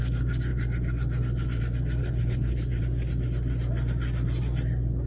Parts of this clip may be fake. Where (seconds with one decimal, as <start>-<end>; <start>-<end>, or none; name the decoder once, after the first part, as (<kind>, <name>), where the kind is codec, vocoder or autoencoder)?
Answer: 2.0-2.8 (codec, HILCodec)